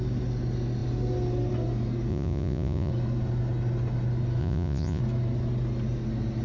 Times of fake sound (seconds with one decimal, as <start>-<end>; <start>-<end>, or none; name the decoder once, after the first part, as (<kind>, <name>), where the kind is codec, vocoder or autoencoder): 2.1-2.9 (vocoder, Vocos); 4.4-5.0